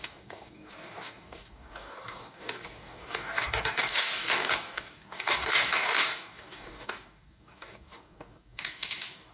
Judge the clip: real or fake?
fake